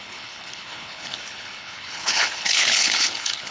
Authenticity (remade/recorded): remade